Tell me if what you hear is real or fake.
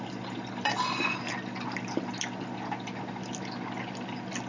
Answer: real